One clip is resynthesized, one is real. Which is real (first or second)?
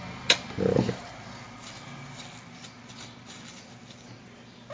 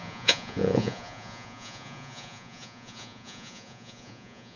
first